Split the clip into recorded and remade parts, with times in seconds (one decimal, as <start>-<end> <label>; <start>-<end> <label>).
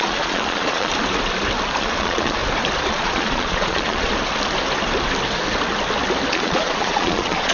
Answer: 0.0-0.9 remade; 0.9-1.8 recorded; 1.8-2.4 remade; 2.4-2.9 recorded; 2.9-4.1 remade; 4.1-6.3 recorded; 6.3-7.5 remade